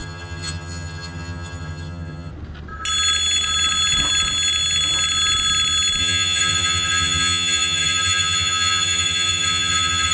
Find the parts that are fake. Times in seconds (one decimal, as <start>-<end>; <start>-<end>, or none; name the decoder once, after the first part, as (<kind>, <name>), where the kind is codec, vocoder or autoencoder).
0.0-2.3 (vocoder, HiFi-GAN); 6.0-10.1